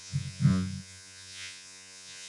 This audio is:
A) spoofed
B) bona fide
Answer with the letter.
A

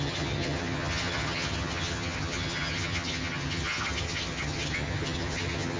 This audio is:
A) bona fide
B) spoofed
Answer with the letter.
B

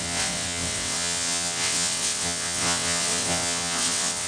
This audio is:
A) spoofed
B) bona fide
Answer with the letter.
A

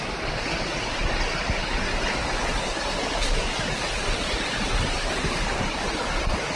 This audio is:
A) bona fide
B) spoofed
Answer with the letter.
A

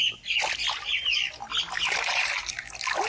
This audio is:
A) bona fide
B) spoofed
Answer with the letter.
A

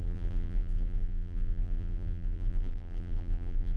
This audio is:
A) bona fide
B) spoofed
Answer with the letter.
B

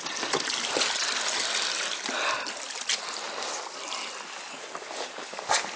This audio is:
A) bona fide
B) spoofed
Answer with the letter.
A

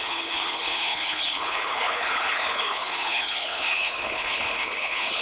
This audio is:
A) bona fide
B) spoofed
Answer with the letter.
B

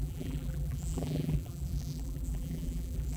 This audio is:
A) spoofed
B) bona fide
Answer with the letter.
A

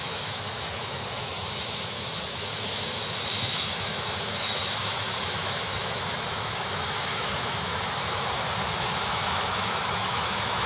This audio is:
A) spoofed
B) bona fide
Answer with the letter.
A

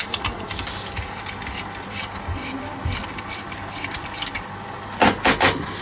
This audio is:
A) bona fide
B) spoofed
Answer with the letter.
A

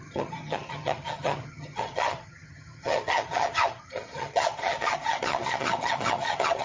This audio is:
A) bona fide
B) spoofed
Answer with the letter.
B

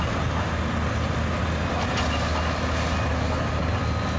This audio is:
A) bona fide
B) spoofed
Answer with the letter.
A